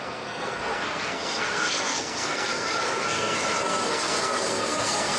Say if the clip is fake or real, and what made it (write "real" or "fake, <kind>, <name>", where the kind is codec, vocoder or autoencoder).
fake, codec, SNAC